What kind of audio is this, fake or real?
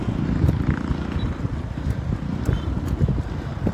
real